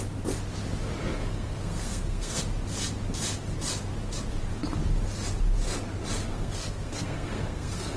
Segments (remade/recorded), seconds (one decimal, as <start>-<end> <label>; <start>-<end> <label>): 0.0-1.2 recorded; 1.2-2.4 remade; 2.4-6.3 recorded; 6.3-8.0 remade